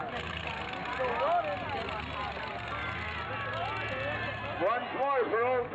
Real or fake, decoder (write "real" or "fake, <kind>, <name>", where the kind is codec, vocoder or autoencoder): real